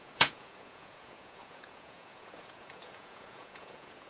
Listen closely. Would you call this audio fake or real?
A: fake